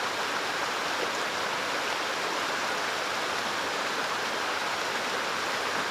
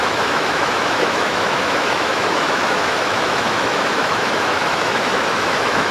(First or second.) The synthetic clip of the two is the second